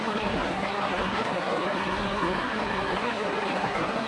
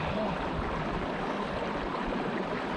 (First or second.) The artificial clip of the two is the first